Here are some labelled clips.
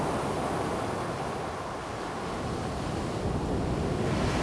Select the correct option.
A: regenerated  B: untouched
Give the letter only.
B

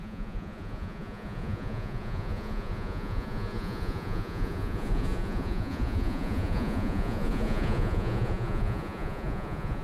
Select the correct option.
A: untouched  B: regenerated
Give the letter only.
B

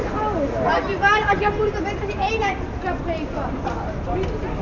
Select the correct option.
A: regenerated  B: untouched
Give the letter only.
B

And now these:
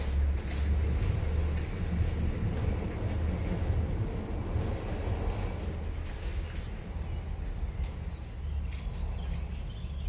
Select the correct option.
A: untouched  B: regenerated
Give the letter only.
A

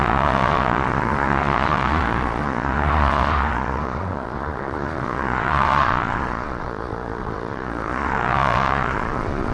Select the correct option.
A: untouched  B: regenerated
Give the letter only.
B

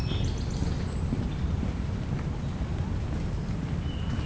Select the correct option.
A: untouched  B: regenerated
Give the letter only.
A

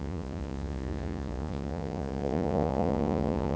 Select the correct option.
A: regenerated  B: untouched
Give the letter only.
A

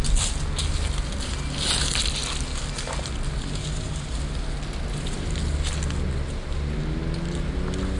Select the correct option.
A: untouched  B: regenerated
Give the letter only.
A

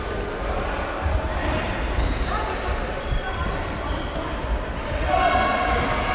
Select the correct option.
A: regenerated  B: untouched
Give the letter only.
B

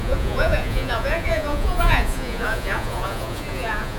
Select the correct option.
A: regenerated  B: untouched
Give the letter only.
A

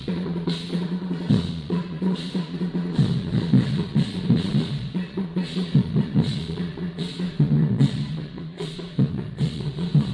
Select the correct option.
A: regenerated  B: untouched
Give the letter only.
A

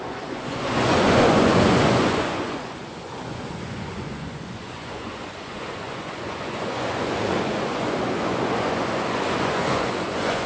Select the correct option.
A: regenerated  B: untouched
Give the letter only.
A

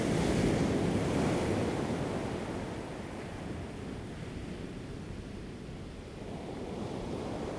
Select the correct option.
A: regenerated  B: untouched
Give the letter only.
B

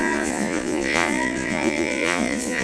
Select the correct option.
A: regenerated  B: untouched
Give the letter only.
A